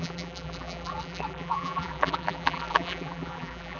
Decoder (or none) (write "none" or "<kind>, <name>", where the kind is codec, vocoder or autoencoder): vocoder, BigVGAN v2